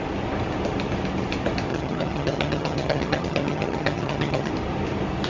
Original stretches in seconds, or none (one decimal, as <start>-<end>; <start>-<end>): 0.0-1.7; 4.5-5.3